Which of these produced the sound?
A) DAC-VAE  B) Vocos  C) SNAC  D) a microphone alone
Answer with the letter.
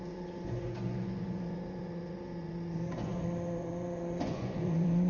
B